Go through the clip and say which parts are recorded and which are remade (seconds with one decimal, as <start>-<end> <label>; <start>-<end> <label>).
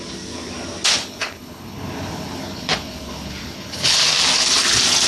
0.0-1.0 recorded; 1.0-4.1 remade; 4.1-5.1 recorded